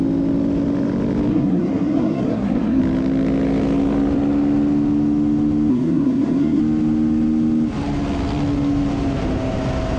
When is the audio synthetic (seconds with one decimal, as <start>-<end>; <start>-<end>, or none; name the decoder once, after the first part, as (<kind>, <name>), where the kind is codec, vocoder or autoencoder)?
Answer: 1.3-2.8 (codec, SNAC); 5.7-6.6